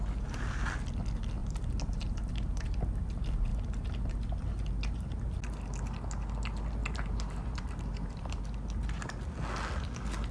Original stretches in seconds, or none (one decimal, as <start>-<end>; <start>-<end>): 0.0-1.4; 2.8-6.8; 8.4-10.3